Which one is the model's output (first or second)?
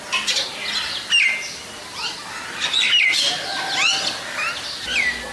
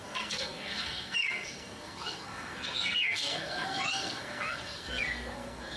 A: second